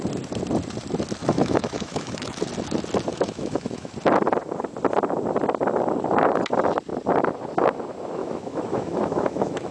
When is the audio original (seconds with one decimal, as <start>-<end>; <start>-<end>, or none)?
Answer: 0.0-1.2; 2.4-3.1; 3.9-8.2